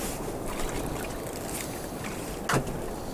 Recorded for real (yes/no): yes